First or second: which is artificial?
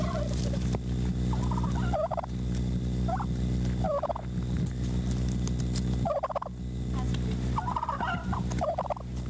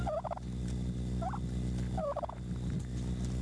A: first